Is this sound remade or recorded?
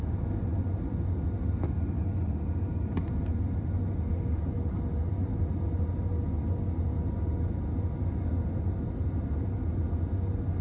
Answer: recorded